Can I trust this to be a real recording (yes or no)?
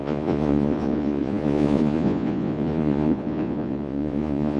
no